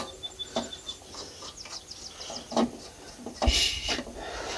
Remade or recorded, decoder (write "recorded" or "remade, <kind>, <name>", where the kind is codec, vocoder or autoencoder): recorded